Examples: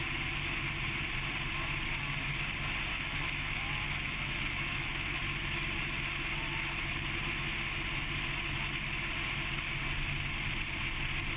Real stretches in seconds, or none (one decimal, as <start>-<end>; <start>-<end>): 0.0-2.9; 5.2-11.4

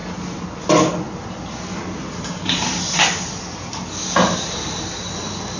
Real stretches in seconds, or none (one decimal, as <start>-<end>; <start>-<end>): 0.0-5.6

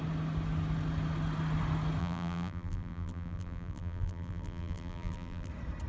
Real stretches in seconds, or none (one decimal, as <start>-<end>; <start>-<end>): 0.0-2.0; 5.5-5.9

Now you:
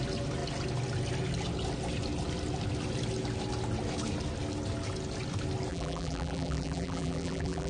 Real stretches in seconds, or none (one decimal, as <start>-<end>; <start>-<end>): 0.0-5.7